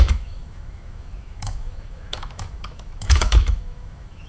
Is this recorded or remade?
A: remade